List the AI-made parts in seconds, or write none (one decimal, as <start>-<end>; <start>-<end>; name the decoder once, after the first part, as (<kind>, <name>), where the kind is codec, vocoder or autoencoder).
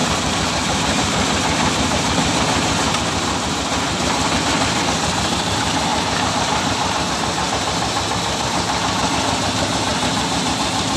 0.0-4.8 (vocoder, BigVGAN v2); 5.9-7.1; 9.9-10.6